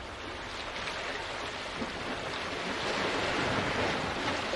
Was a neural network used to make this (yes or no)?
no